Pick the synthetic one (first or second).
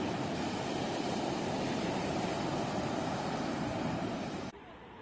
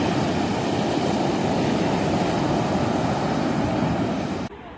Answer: first